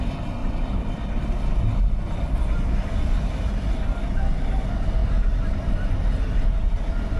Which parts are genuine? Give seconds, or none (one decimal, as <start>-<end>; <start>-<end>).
0.0-0.4; 3.5-5.0; 6.1-7.2